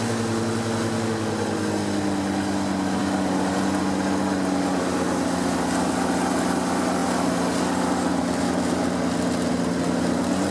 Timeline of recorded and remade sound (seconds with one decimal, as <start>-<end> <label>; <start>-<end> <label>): 0.0-10.5 recorded